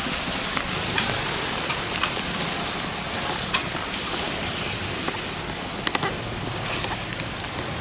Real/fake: fake